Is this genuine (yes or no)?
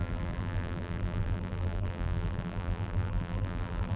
no